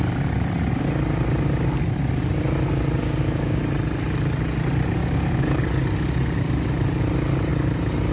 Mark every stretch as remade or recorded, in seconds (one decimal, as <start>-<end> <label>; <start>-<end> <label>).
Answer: 0.0-3.0 recorded; 3.0-3.6 remade; 3.6-5.0 recorded; 5.0-5.6 remade; 5.6-8.1 recorded